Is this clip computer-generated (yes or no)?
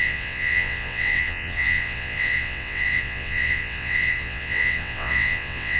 yes